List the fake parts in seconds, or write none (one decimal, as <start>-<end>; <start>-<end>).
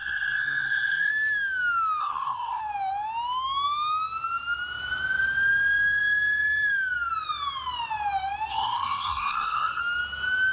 0.0-1.1; 2.0-2.6; 8.5-9.8